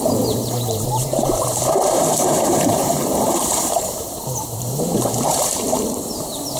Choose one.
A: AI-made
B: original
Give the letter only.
A